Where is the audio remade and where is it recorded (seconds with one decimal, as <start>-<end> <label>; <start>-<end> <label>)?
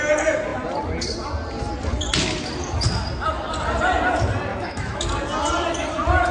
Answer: 0.0-4.5 recorded; 4.5-5.0 remade; 5.0-6.3 recorded